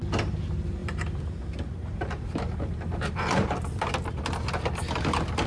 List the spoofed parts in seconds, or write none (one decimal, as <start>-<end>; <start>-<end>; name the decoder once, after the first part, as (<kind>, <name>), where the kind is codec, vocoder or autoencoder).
0.8-4.1 (vocoder, BigVGAN v2)